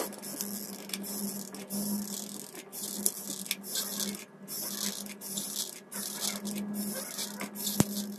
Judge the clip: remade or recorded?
recorded